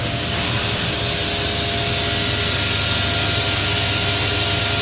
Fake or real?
real